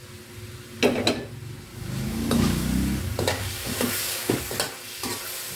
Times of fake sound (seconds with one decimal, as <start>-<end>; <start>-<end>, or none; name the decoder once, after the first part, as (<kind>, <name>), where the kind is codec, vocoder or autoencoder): 1.7-4.4 (codec, DAC)